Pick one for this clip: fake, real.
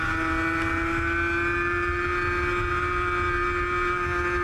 real